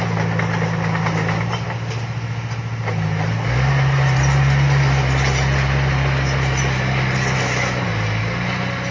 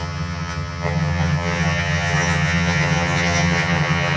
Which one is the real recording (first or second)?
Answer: first